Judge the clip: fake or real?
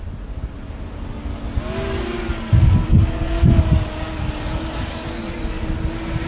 real